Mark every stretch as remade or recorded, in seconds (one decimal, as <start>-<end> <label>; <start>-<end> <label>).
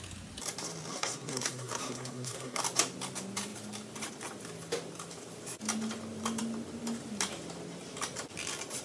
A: 0.0-0.9 recorded; 0.9-2.6 remade; 2.6-8.8 recorded